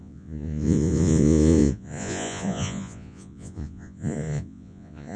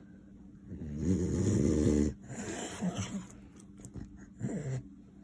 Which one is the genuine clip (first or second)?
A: second